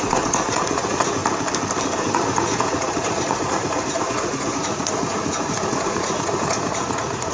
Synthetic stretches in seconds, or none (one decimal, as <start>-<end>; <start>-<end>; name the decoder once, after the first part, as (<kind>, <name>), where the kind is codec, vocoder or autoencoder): 0.0-1.2 (vocoder, Vocos); 2.0-7.3